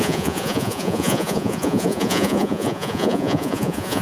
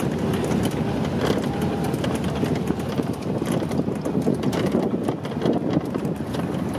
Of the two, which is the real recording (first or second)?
second